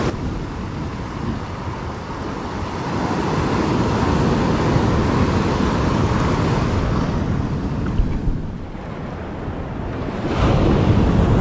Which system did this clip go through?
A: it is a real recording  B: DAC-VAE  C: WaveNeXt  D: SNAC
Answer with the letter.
A